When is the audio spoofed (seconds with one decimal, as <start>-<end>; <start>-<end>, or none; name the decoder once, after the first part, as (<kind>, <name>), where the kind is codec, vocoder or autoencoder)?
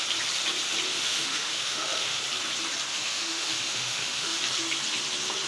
0.9-2.2 (autoencoder, DAC-VAE); 2.9-4.4